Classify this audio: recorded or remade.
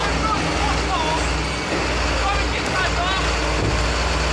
recorded